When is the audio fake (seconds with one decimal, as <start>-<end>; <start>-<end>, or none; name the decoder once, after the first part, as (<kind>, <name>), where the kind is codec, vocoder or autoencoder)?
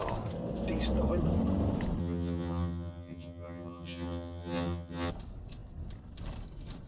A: 2.0-5.1 (vocoder, HiFi-GAN)